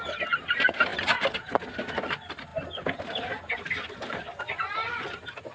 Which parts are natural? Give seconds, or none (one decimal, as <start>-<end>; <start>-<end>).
0.0-5.5